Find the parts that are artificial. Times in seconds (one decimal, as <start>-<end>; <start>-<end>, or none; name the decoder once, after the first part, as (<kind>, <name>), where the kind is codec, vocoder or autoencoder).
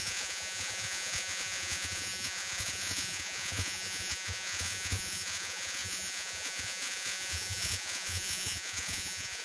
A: 0.0-9.4 (vocoder, Vocos)